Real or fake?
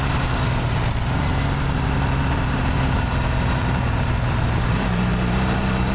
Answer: fake